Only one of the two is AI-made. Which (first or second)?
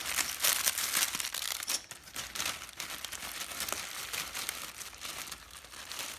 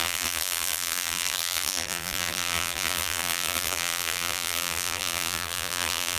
second